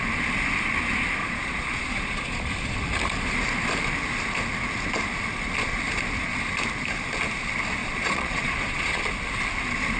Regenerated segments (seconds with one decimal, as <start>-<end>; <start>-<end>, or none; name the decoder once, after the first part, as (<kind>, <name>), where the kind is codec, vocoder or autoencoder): 1.2-2.4 (vocoder, Vocos); 7.8-9.0